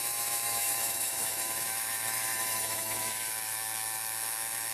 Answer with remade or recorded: remade